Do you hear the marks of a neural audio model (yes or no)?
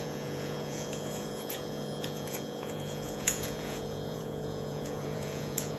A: yes